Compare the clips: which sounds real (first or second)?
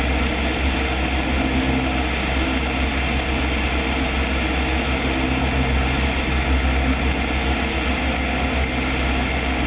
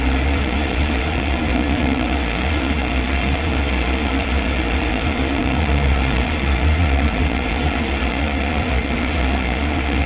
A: first